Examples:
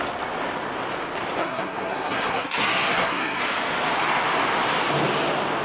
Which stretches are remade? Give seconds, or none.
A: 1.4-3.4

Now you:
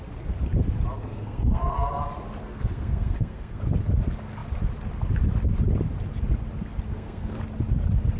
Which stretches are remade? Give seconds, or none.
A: 1.0-2.0; 2.4-3.6; 6.9-7.4

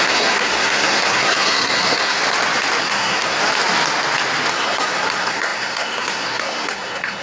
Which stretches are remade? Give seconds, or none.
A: 0.0-2.2; 2.8-3.4; 4.5-7.2

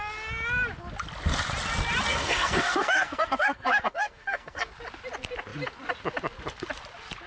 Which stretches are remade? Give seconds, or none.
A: 2.1-4.7

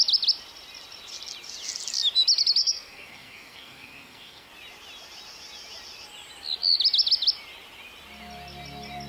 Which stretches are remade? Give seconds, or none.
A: 2.6-4.5